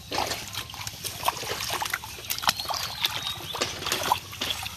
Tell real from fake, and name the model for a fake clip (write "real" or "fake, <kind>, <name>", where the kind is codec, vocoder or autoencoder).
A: real